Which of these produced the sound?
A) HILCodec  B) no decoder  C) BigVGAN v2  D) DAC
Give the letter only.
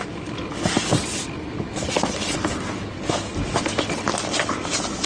B